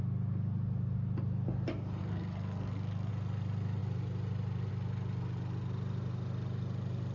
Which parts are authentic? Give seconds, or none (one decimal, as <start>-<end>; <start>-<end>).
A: 0.0-2.0; 3.1-7.1